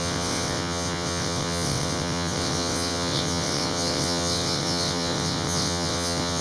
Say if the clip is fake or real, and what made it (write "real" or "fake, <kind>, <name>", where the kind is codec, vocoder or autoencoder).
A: fake, vocoder, WaveNeXt